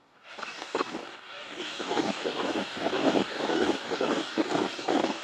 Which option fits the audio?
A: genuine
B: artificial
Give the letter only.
B